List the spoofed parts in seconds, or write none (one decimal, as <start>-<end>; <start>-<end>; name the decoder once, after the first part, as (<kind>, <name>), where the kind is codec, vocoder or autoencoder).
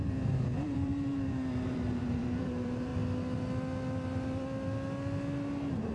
0.0-2.9 (vocoder, BigVGAN v2)